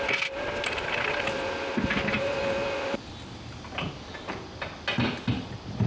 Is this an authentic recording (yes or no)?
yes